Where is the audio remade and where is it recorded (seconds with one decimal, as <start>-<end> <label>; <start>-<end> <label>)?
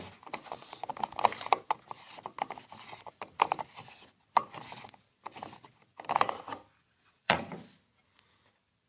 0.0-0.4 recorded; 0.4-0.9 remade; 0.9-6.8 recorded; 6.8-7.4 remade; 7.4-8.9 recorded